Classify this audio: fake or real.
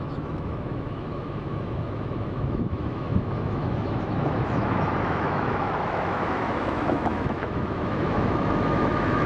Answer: fake